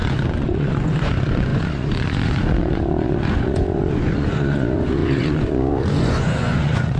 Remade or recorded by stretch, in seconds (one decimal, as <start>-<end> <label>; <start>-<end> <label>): 0.0-7.0 remade